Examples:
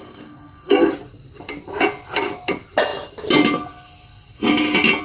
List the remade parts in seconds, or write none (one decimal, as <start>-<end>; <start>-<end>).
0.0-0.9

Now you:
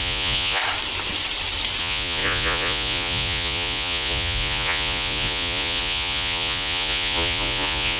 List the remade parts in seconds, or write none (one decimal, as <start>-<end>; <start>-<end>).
0.0-0.6; 1.8-8.0

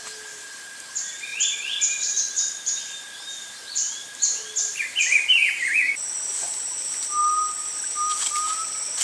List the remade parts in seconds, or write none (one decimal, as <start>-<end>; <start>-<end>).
none

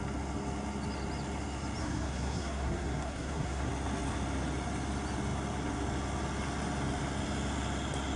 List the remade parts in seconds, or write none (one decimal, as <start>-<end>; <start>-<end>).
1.8-3.7

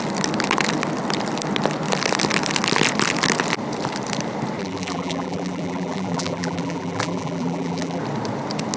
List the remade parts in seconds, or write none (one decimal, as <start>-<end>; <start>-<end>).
4.6-8.0

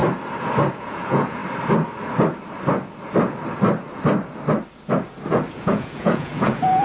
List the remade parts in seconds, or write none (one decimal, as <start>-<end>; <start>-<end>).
0.7-1.4; 5.5-6.8

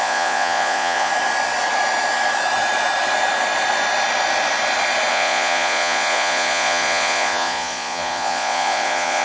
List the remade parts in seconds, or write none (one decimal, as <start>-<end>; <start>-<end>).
0.0-1.1; 5.1-9.2

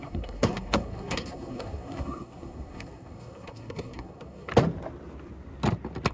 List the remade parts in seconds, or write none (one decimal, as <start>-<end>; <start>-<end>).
0.0-4.5